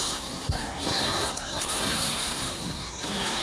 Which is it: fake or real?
fake